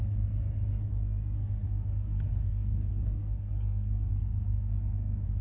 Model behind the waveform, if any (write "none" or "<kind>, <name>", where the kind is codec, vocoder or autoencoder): codec, SNAC